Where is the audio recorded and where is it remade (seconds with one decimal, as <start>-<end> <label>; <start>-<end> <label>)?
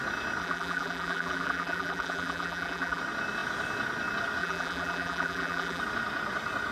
0.0-0.4 recorded; 0.4-3.0 remade; 3.0-4.4 recorded; 4.4-5.8 remade; 5.8-6.7 recorded